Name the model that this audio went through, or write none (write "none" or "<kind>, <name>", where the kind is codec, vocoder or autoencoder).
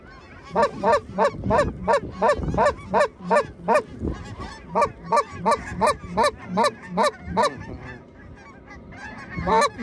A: none